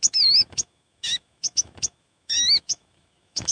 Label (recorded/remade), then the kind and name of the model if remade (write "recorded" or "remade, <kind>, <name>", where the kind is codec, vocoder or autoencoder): remade, autoencoder, DAC-VAE